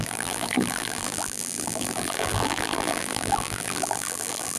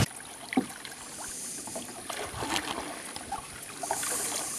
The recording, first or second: second